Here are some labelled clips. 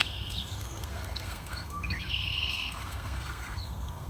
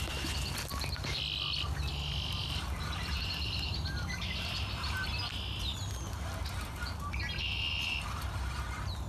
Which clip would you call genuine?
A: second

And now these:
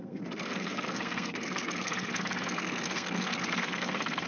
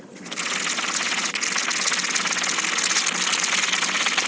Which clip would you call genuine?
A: second